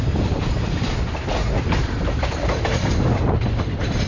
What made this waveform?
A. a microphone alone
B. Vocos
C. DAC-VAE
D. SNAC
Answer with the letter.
A